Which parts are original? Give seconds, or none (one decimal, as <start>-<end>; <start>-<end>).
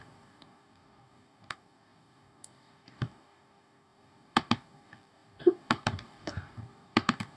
none